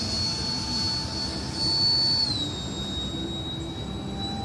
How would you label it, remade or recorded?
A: recorded